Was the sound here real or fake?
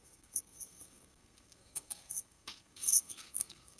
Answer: fake